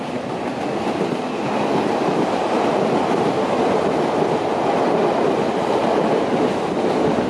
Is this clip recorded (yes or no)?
yes